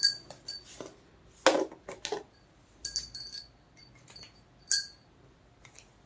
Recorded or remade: recorded